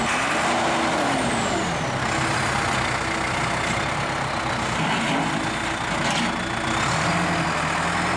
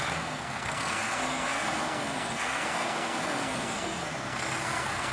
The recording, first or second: first